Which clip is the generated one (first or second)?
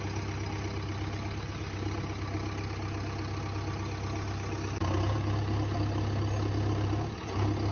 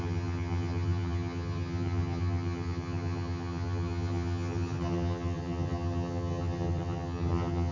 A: second